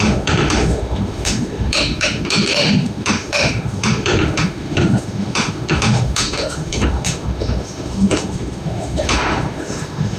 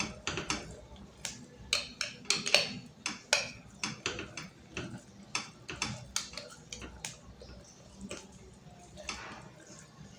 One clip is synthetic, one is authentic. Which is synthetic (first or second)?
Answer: first